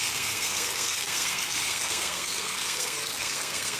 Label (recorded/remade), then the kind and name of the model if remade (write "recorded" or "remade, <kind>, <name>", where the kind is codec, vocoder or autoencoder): remade, codec, SNAC